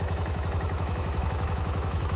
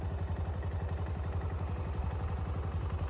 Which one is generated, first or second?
first